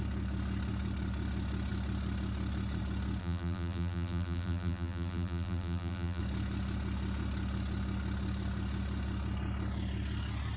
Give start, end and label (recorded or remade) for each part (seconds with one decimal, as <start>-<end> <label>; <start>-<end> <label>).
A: 0.0-3.2 recorded; 3.2-6.2 remade; 6.2-10.6 recorded